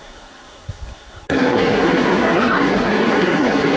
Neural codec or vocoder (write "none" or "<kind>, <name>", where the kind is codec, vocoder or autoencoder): codec, SNAC